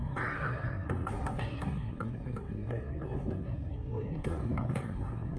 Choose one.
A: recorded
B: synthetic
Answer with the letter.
B